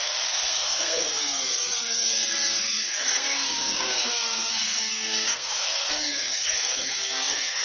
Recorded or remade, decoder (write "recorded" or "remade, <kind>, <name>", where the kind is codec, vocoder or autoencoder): remade, codec, SNAC